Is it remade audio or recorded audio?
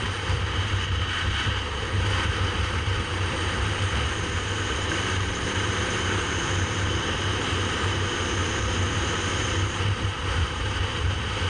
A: remade